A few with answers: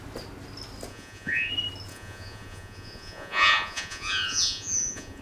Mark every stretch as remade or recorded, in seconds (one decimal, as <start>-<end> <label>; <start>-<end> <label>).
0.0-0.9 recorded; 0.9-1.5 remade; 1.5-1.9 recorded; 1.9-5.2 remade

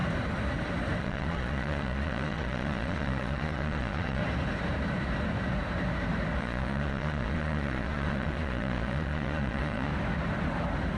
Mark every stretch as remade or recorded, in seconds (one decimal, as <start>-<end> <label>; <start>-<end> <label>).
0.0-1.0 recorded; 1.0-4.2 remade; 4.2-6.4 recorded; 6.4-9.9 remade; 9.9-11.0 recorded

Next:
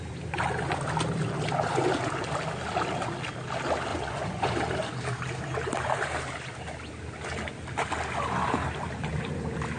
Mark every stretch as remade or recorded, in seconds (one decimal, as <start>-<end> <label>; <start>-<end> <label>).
0.0-3.9 recorded; 3.9-4.6 remade; 4.6-9.8 recorded

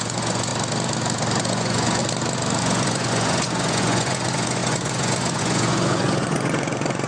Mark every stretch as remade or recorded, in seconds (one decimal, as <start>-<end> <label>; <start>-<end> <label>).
0.0-0.5 remade; 0.5-1.4 recorded; 1.4-2.0 remade; 2.0-2.6 recorded; 2.6-7.1 remade